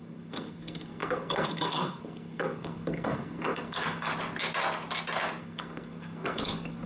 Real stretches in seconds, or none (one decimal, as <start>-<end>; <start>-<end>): 4.1-5.4